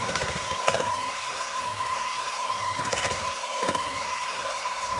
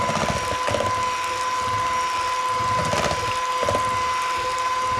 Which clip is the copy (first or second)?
first